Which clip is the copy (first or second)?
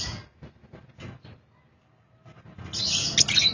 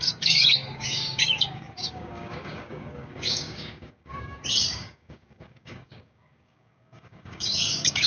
second